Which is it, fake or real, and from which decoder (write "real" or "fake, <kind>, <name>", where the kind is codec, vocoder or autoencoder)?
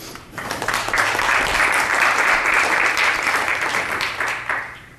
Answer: fake, vocoder, BigVGAN v2